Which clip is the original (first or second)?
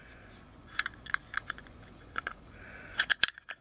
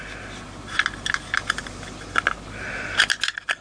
second